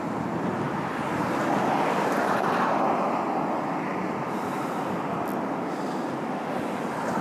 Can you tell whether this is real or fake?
real